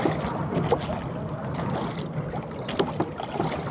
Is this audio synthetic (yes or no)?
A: no